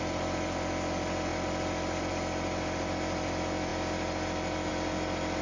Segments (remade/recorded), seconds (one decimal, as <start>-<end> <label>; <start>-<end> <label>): 0.0-5.4 recorded